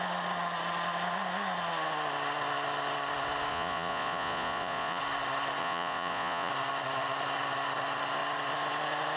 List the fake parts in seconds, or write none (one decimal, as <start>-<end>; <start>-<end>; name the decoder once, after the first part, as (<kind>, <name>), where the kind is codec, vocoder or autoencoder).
3.5-5.0 (vocoder, Vocos); 5.6-6.5